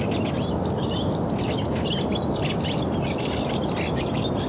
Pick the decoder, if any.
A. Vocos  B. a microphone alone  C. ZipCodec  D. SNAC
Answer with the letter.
B